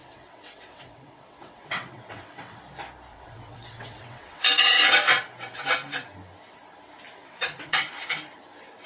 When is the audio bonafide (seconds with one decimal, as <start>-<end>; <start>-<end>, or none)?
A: 2.6-3.1; 4.9-7.2; 7.8-8.9